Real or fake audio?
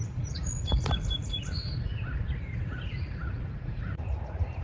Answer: fake